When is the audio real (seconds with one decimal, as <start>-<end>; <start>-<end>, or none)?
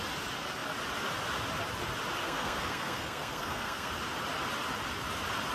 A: 0.0-2.2; 3.9-5.5